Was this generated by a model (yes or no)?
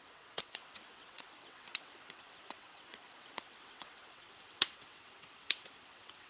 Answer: yes